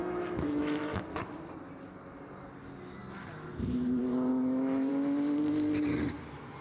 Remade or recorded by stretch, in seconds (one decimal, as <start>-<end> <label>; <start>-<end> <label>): 0.0-1.0 remade; 1.0-4.3 recorded; 4.3-4.9 remade; 4.9-6.6 recorded